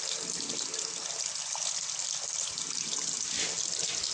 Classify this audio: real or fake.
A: real